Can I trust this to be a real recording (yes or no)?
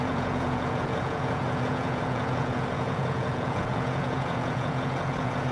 no